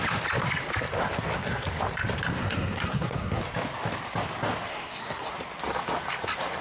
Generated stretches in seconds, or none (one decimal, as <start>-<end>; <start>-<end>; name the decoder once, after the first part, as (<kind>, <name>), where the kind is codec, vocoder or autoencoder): 2.4-3.4 (codec, SNAC); 4.7-5.3